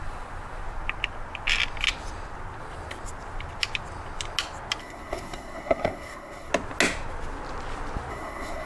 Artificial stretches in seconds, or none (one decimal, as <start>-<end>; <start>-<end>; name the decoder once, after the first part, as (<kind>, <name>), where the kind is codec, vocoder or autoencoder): 4.8-6.5 (codec, SNAC); 8.1-8.7